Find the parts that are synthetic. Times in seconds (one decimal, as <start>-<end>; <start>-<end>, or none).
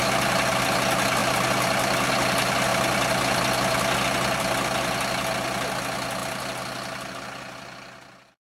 none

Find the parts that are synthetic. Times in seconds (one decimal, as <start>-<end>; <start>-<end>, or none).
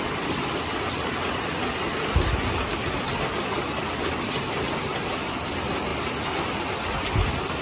none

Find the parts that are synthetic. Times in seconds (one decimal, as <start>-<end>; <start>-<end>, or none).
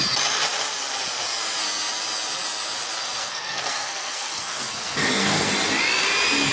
3.0-5.5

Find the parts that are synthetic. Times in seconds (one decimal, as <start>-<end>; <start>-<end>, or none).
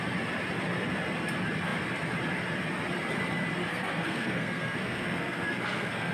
3.7-6.1